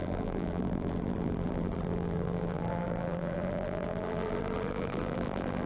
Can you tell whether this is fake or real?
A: fake